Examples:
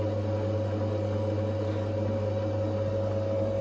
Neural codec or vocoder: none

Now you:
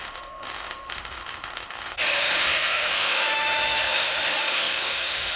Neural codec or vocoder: autoencoder, DAC-VAE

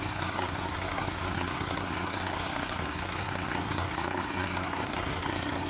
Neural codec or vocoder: codec, SNAC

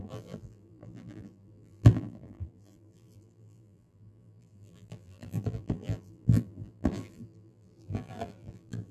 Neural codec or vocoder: vocoder, BigVGAN v2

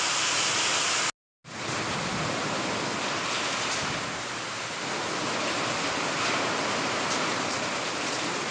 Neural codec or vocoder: none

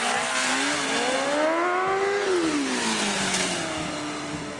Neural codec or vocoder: none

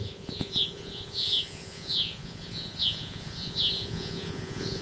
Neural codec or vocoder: vocoder, Vocos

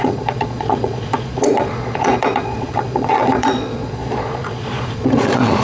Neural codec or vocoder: vocoder, Vocos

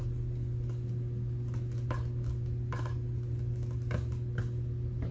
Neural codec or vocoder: none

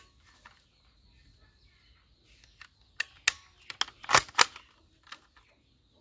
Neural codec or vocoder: none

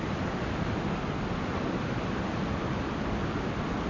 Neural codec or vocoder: none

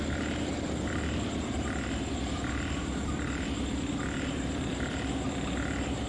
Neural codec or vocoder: none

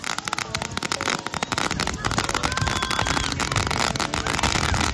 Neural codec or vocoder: none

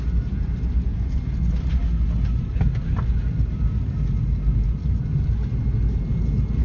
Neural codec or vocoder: none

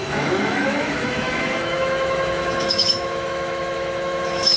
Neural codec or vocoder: autoencoder, DAC-VAE